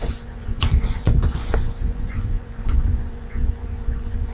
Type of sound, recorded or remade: remade